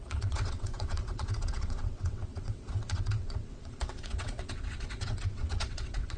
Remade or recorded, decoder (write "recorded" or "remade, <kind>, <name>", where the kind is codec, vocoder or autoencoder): remade, vocoder, WaveNeXt